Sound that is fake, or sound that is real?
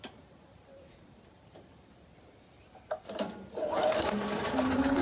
fake